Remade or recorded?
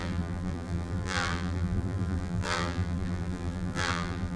remade